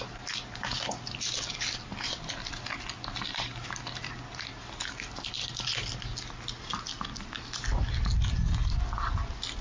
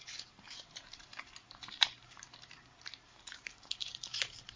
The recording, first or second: first